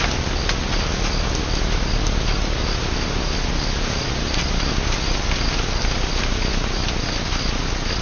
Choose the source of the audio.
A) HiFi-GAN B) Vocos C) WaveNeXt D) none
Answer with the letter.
D